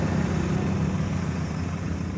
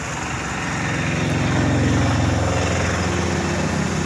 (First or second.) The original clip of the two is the second